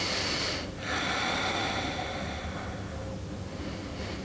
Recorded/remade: recorded